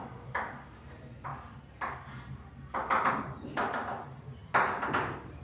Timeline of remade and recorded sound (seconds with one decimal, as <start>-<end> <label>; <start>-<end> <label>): 0.0-1.3 remade; 1.3-3.1 recorded; 3.1-4.4 remade; 4.4-4.9 recorded; 4.9-5.4 remade